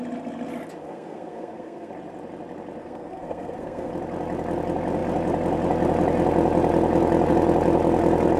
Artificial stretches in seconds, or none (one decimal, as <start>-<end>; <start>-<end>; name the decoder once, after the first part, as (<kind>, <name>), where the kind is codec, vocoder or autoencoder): 0.8-1.9 (codec, SNAC); 2.8-3.9

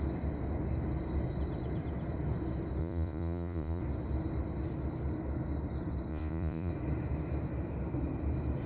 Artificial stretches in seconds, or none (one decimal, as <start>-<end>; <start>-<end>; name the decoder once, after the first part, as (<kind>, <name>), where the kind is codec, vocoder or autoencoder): 2.8-3.8 (vocoder, Vocos); 6.1-6.7

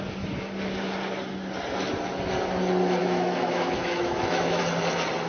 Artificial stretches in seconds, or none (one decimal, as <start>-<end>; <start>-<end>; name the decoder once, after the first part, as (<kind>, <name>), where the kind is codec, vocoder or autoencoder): 3.0-4.6 (autoencoder, DAC-VAE)

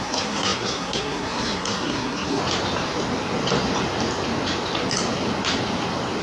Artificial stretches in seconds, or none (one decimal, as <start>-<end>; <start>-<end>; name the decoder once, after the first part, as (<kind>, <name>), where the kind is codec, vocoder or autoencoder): 0.0-2.4 (codec, SNAC)

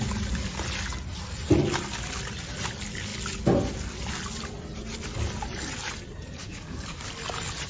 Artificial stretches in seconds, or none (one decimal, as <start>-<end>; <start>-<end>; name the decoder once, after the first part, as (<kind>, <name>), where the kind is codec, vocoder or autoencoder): 6.4-7.1 (codec, DAC)

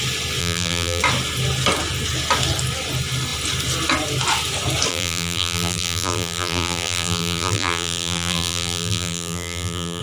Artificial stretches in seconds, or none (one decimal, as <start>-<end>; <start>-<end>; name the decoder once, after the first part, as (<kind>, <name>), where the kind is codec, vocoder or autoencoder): 0.4-1.0 (vocoder, BigVGAN v2); 4.9-10.0